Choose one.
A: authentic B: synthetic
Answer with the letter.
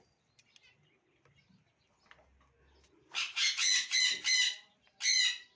A